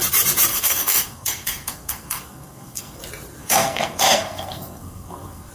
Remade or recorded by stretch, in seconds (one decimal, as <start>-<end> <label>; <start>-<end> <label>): 0.0-0.5 recorded; 0.5-3.0 remade; 3.0-3.4 recorded; 3.4-5.5 remade